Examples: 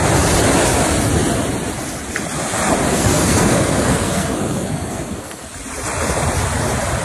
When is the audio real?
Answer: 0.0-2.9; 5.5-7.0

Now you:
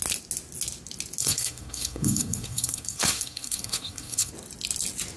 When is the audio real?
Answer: 0.0-1.2; 4.3-5.2

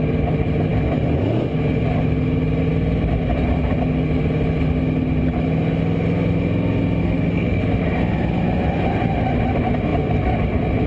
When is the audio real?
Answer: 0.0-7.0; 7.6-10.9

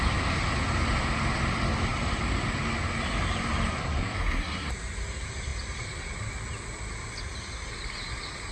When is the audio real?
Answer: 0.0-3.7; 4.7-8.5

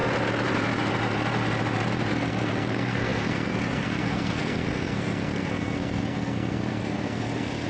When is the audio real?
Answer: 0.0-2.1